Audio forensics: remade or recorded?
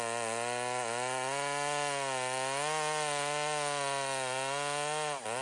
recorded